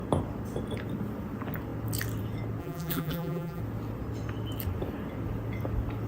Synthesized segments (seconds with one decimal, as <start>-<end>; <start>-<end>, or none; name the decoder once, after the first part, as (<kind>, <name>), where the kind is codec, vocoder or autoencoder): 2.6-3.6 (vocoder, BigVGAN v2)